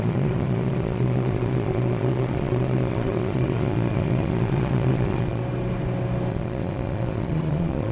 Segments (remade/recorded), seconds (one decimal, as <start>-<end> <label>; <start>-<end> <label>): 0.0-5.4 remade; 5.4-6.3 recorded; 6.3-7.9 remade